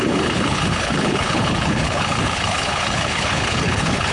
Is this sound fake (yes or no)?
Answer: yes